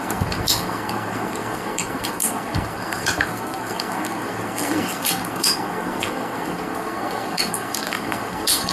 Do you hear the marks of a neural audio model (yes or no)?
yes